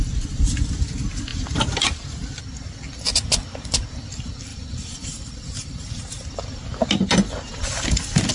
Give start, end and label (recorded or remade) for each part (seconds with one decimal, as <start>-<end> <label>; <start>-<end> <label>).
0.0-1.3 recorded; 1.3-2.4 remade; 2.4-4.5 recorded; 4.5-6.5 remade; 6.5-8.3 recorded